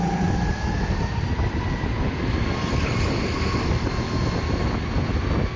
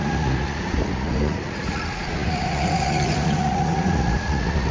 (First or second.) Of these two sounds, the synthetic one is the second